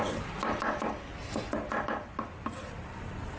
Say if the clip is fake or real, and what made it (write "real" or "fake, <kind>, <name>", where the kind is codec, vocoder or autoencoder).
real